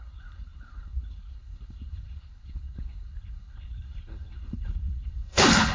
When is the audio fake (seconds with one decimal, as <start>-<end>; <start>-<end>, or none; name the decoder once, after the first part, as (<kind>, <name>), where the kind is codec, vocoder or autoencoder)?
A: 0.0-5.7 (codec, HILCodec)